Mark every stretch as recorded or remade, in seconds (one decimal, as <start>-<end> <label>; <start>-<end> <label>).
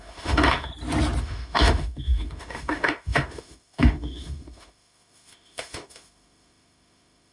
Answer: 0.0-0.7 remade; 0.7-1.2 recorded; 1.2-7.3 remade